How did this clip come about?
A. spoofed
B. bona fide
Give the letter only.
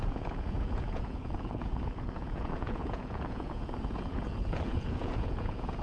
A